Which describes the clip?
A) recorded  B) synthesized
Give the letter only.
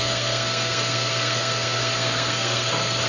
B